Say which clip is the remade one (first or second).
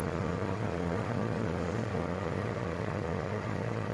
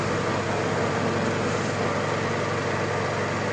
first